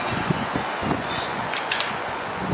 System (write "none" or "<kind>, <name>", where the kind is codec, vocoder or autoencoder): vocoder, Vocos